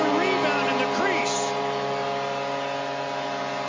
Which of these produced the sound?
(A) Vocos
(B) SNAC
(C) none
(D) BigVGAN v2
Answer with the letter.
C